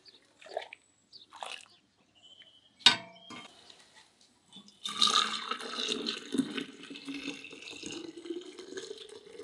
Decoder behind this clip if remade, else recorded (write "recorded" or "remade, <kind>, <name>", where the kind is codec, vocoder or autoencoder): recorded